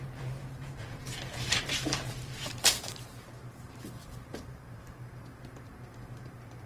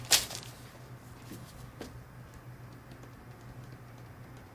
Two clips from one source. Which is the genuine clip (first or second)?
second